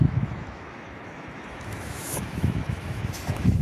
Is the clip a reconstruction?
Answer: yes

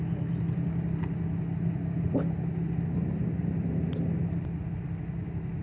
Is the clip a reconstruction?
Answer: no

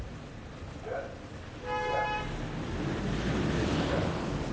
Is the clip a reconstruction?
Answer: no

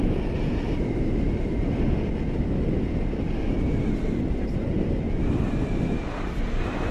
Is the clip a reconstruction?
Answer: no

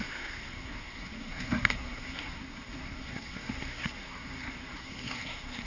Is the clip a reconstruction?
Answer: yes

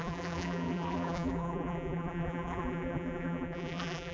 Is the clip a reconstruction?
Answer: yes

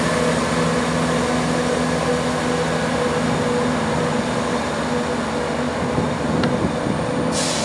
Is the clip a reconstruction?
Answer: no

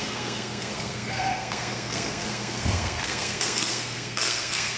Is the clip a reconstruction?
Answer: yes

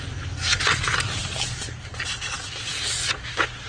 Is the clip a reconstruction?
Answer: no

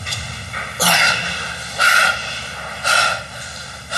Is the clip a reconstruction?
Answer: no